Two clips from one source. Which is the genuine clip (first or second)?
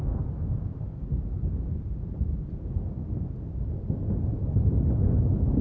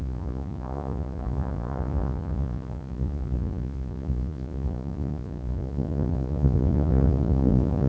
first